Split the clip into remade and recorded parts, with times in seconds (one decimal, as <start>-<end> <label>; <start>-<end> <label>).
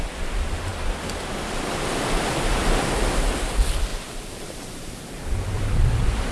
0.0-3.9 recorded; 3.9-6.3 remade